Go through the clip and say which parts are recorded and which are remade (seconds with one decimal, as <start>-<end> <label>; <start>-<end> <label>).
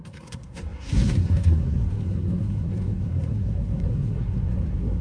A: 0.0-5.0 remade